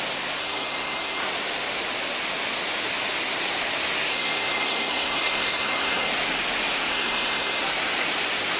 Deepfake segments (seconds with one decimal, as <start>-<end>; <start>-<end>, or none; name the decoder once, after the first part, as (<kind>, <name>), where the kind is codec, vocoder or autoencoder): 0.4-1.2 (codec, SNAC); 4.1-6.1; 6.9-7.6

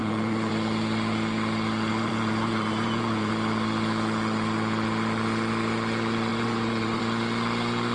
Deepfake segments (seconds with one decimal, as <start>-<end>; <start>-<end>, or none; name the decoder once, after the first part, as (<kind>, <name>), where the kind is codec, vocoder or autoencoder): 0.0-0.5 (vocoder, Vocos); 1.9-3.3; 6.3-7.0

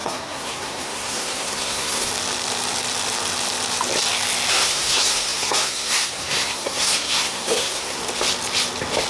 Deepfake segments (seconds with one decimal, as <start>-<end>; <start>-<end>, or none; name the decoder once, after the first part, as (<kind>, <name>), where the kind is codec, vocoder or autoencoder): 0.0-2.1 (codec, SNAC); 4.5-8.0

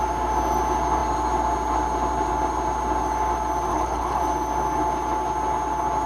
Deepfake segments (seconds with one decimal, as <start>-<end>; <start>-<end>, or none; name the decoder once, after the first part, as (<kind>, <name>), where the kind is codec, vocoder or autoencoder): 3.7-4.2 (codec, HILCodec)

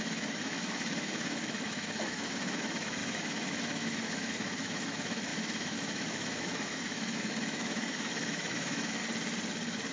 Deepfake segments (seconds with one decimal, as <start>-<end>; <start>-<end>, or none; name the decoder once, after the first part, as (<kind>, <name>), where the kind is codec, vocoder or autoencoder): 0.0-9.0 (autoencoder, DAC-VAE)

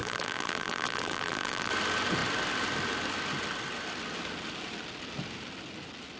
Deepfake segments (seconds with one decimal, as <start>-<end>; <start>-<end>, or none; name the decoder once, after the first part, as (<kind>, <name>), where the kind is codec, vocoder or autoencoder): 0.0-1.7 (vocoder, BigVGAN v2)

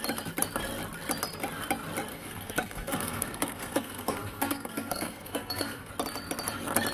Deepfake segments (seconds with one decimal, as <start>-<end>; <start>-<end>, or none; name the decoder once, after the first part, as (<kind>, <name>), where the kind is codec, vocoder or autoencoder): 2.1-5.9 (codec, SNAC)